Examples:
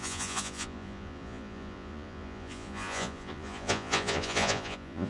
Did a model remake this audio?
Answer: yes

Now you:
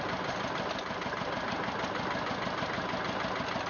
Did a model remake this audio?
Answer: no